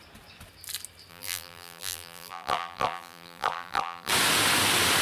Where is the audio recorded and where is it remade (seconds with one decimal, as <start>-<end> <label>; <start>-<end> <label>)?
0.0-1.1 recorded; 1.1-4.1 remade; 4.1-5.0 recorded